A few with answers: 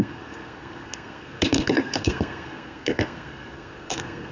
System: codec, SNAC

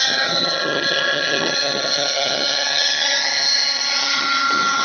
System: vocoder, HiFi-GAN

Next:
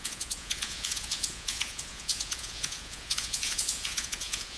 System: vocoder, Vocos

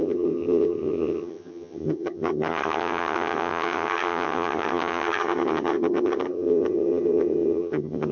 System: vocoder, HiFi-GAN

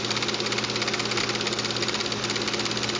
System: none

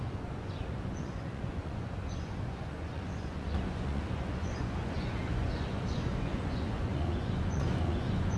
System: vocoder, Vocos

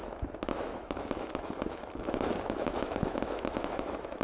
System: autoencoder, DAC-VAE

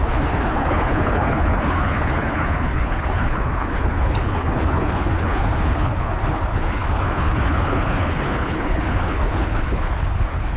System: codec, HILCodec